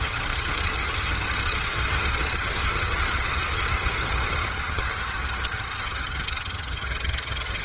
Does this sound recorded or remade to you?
remade